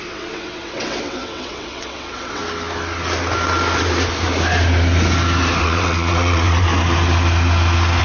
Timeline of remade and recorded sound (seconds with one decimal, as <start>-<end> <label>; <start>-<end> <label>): 0.0-2.4 remade; 2.4-5.6 recorded; 5.6-6.7 remade; 6.7-8.0 recorded